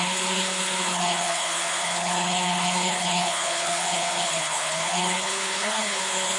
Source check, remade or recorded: remade